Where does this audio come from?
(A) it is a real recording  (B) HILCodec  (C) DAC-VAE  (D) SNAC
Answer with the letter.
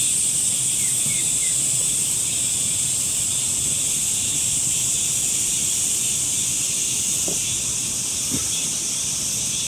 A